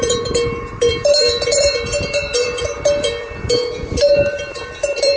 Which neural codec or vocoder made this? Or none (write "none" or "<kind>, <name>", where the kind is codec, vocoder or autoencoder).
vocoder, BigVGAN v2